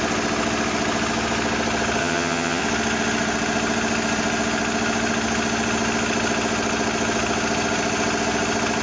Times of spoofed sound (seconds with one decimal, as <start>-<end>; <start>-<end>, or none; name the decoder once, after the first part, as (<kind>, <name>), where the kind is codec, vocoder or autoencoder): 2.0-2.6 (vocoder, HiFi-GAN)